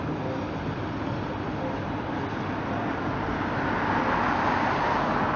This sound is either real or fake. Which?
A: real